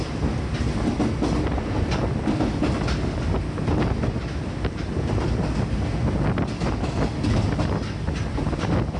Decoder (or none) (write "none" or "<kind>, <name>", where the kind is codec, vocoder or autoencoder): none